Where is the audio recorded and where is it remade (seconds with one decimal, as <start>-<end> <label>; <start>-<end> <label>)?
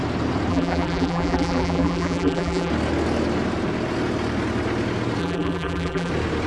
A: 0.0-0.5 recorded; 0.5-2.7 remade; 2.7-5.2 recorded; 5.2-6.1 remade; 6.1-6.5 recorded